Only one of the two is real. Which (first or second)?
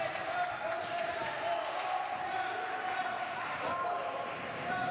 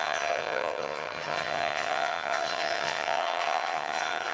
first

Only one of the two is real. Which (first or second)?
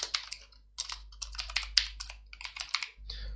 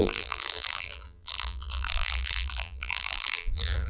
first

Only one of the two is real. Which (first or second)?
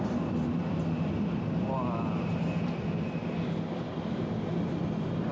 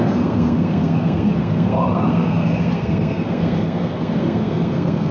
first